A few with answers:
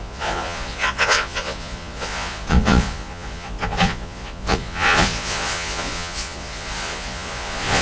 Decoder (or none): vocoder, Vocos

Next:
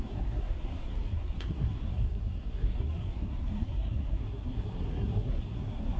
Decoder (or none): codec, SNAC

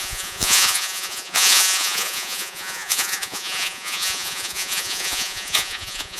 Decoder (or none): vocoder, Vocos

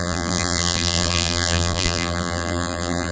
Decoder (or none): vocoder, BigVGAN v2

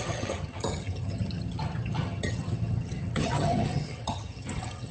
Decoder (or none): vocoder, HiFi-GAN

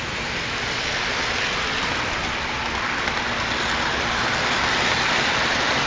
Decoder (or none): none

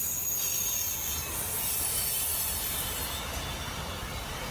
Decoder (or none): none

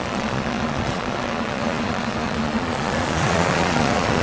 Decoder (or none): vocoder, Vocos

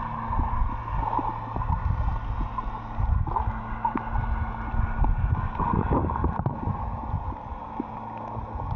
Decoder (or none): none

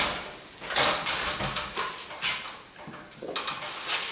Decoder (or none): none